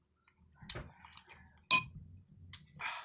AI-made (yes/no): no